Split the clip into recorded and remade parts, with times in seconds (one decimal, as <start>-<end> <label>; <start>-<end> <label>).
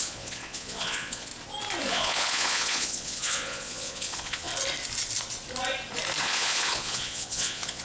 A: 0.0-1.3 remade; 1.3-1.9 recorded; 1.9-4.5 remade; 4.5-6.2 recorded; 6.2-7.8 remade